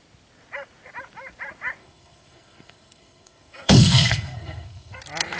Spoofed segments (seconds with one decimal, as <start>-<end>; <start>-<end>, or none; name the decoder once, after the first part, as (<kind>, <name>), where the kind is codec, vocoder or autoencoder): 1.8-5.0 (codec, SNAC)